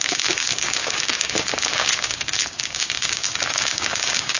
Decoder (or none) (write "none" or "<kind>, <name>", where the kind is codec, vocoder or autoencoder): codec, DAC